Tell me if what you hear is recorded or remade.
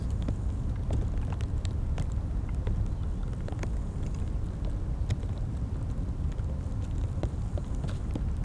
recorded